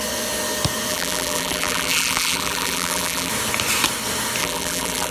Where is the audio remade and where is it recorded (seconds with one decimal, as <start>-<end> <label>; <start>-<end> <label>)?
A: 0.0-0.9 recorded; 0.9-3.3 remade; 3.3-4.4 recorded; 4.4-5.1 remade